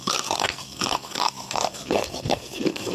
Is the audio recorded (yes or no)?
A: no